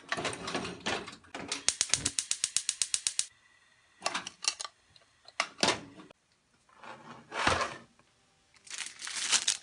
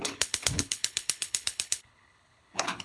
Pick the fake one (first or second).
second